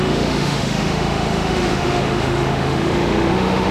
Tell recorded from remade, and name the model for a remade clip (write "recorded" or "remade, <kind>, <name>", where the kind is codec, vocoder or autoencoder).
remade, autoencoder, DAC-VAE